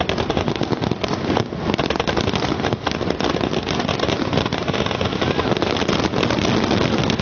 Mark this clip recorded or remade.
recorded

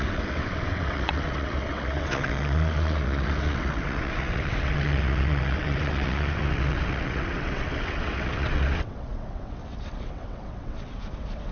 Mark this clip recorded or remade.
remade